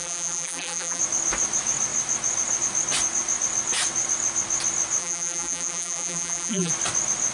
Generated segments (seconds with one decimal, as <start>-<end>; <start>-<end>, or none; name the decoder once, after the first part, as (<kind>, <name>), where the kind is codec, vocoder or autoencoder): 0.0-1.0 (vocoder, BigVGAN v2); 5.0-6.7